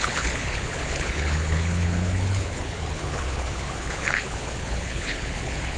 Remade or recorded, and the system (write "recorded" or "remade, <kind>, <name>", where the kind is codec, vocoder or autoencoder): remade, codec, HILCodec